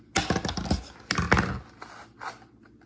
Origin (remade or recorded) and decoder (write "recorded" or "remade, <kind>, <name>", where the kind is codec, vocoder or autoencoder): recorded